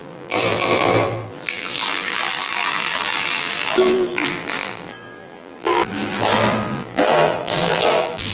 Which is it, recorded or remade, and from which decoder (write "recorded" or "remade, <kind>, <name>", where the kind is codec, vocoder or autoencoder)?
remade, vocoder, BigVGAN v2